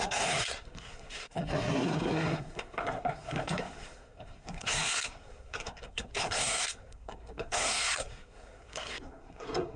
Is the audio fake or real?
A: fake